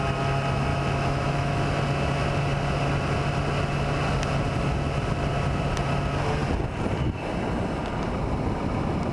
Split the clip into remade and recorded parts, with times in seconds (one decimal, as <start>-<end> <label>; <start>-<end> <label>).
0.0-0.7 recorded; 0.7-1.6 remade; 1.6-9.1 recorded

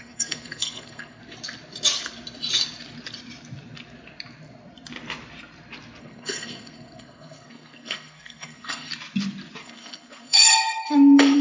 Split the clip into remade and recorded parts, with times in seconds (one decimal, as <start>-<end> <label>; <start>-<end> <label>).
0.0-1.2 remade; 1.2-6.0 recorded; 6.0-8.9 remade; 8.9-9.6 recorded; 9.6-11.4 remade

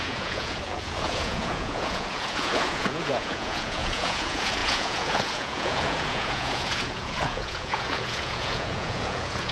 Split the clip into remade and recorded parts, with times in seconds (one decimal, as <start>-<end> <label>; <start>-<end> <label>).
0.0-9.5 remade

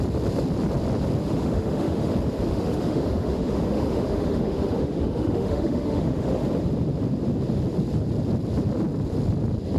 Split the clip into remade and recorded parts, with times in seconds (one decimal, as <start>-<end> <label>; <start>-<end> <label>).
0.0-1.2 recorded; 1.2-2.1 remade; 2.1-2.5 recorded; 2.5-6.4 remade; 6.4-9.8 recorded

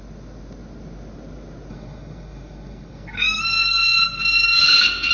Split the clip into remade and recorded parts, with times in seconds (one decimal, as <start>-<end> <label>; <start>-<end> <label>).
0.0-1.7 recorded; 1.7-5.1 remade

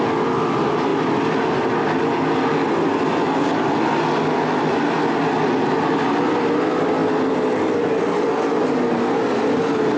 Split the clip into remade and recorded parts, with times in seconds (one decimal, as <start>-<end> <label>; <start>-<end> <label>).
0.0-10.0 recorded

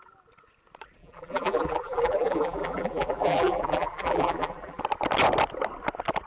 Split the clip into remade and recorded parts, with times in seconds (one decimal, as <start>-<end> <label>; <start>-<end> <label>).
0.0-1.0 recorded; 1.0-4.8 remade; 4.8-6.3 recorded

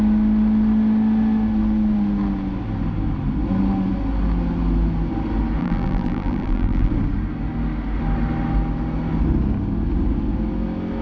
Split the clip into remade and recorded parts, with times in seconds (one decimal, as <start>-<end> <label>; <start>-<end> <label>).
0.0-5.6 recorded; 5.6-6.9 remade; 6.9-11.0 recorded